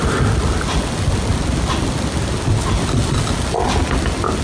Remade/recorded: recorded